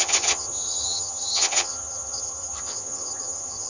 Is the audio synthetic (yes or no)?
yes